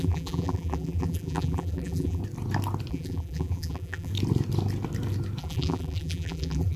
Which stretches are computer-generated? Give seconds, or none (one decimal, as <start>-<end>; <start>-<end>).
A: 0.0-2.2; 2.9-4.1; 5.4-6.8